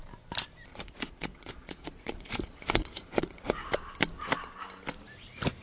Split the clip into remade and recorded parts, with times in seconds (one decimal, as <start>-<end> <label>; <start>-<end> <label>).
0.0-0.7 recorded; 0.7-3.7 remade; 3.7-5.6 recorded